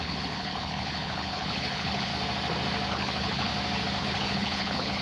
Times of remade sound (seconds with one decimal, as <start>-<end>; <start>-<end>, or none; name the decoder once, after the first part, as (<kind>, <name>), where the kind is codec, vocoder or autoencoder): 0.0-2.1 (codec, HILCodec); 2.9-3.5; 4.0-5.0